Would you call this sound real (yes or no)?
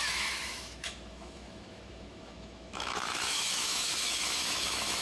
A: no